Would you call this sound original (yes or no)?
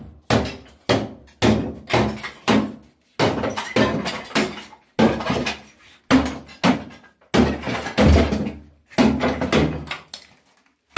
yes